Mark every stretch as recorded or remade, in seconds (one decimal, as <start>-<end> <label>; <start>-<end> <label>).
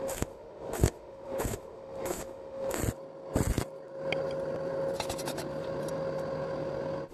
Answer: 0.0-2.8 remade; 2.8-7.1 recorded